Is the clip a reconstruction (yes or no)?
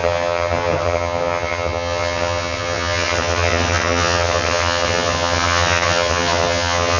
yes